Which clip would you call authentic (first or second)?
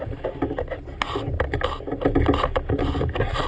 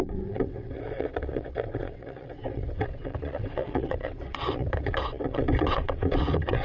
first